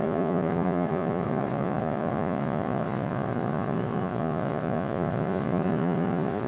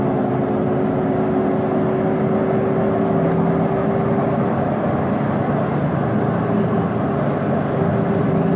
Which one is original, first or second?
second